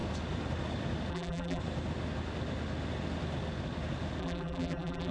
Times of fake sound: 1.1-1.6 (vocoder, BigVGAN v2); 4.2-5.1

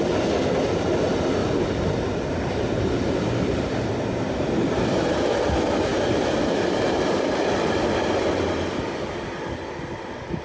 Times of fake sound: 1.4-5.2 (vocoder, BigVGAN v2); 5.9-7.4

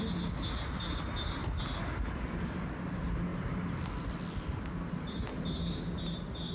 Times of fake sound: 1.4-2.1 (vocoder, BigVGAN v2)

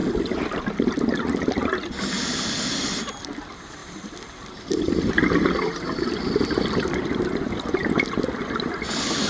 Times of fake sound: 3.8-5.0 (vocoder, BigVGAN v2)